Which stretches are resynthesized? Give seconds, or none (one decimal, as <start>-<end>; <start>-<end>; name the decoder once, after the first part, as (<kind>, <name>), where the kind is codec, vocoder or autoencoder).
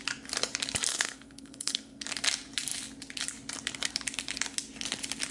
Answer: 0.9-2.0 (codec, SNAC)